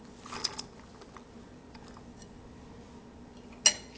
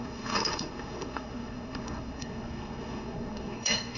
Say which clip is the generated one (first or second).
second